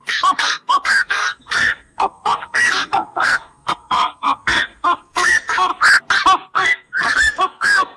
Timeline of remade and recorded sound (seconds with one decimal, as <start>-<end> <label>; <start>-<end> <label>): 0.0-5.7 remade; 5.7-6.5 recorded; 6.5-8.0 remade